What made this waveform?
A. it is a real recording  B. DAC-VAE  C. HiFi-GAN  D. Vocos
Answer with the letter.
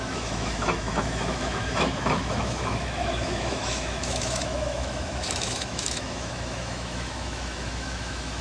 B